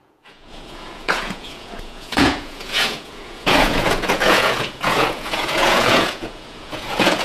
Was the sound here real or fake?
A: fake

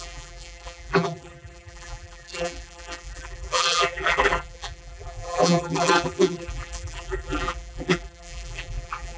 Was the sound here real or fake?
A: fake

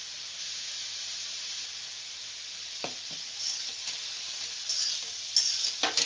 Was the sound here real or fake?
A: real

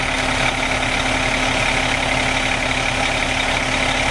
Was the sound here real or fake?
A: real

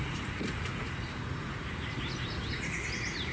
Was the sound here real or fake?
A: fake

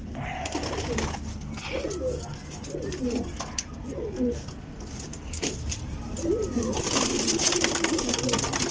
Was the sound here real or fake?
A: real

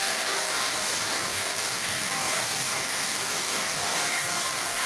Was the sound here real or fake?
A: fake